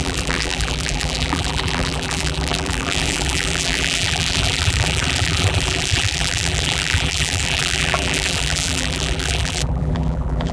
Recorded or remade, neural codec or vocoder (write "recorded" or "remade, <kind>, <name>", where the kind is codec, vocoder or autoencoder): remade, vocoder, BigVGAN v2